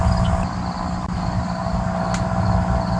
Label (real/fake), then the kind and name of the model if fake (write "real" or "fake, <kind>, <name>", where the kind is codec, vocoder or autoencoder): real